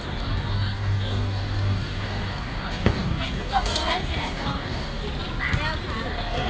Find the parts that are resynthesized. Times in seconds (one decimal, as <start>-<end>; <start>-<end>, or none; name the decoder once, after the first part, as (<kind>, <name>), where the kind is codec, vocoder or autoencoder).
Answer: 0.0-5.0 (codec, DAC); 6.1-6.5